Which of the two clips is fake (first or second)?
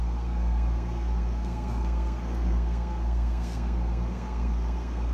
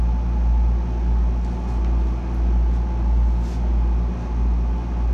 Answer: first